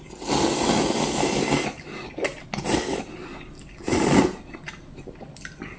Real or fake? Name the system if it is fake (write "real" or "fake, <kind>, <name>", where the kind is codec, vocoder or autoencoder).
real